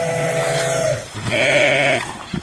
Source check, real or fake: fake